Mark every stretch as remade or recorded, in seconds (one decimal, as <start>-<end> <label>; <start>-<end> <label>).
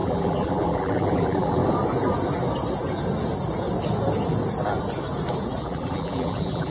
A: 0.0-1.6 remade; 1.6-5.6 recorded; 5.6-6.7 remade